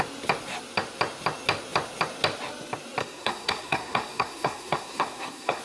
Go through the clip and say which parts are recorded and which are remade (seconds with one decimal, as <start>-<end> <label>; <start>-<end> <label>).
0.0-3.0 recorded; 3.0-5.6 remade